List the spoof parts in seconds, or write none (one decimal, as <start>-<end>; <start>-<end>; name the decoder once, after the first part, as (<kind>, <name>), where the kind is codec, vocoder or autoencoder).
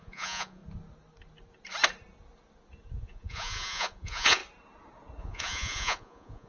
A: 0.0-0.6 (vocoder, Vocos); 2.9-4.4; 5.2-6.5